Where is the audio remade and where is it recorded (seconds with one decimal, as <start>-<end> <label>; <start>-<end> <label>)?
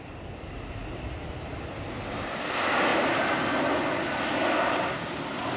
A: 0.0-5.6 recorded